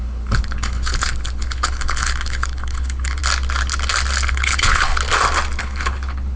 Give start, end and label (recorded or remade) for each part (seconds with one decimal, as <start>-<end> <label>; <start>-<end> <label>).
0.0-3.2 remade; 3.2-4.3 recorded; 4.3-4.9 remade; 4.9-5.6 recorded; 5.6-6.4 remade